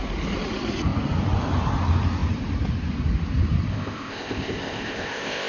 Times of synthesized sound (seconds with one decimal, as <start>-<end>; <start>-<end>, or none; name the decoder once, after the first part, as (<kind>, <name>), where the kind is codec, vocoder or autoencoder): 3.7-5.5 (codec, ZipCodec)